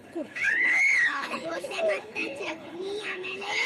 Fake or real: fake